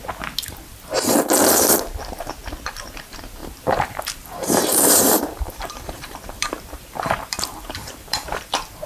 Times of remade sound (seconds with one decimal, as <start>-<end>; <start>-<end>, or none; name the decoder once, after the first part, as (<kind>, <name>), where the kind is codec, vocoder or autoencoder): 3.4-8.5 (vocoder, BigVGAN v2)